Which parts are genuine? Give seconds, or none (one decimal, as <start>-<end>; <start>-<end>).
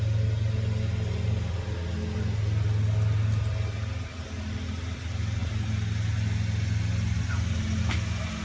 0.0-8.4